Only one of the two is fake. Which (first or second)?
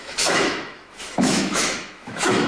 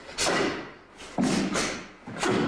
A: first